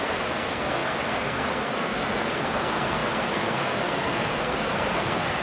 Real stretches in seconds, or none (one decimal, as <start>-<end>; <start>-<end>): none